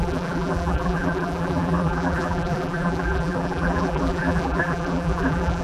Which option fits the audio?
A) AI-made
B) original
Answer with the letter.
A